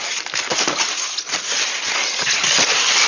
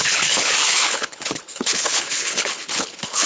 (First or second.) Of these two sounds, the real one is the first